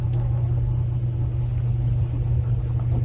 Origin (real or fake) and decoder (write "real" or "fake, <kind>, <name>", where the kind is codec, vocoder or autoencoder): real